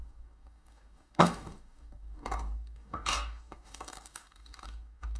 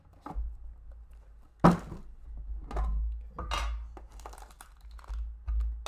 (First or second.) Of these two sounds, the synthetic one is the first